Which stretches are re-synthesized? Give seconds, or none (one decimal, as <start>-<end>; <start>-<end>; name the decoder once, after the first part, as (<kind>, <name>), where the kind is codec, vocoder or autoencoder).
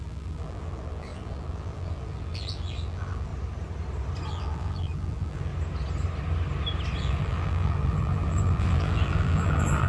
0.0-3.3 (vocoder, BigVGAN v2); 4.3-5.5; 7.0-9.9